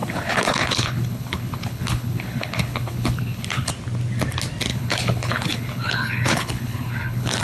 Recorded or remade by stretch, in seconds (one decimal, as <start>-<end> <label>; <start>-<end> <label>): 0.0-3.7 remade; 3.7-4.7 recorded; 4.7-7.4 remade